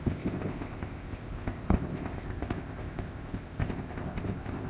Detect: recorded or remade remade